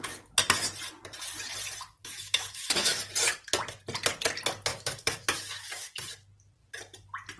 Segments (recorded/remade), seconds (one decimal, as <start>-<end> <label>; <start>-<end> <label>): 0.0-2.0 recorded; 2.0-3.0 remade; 3.0-4.7 recorded; 4.7-6.0 remade; 6.0-7.4 recorded